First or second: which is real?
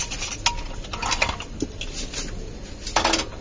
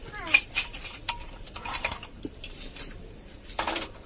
first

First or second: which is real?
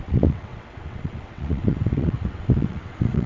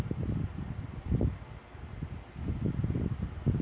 second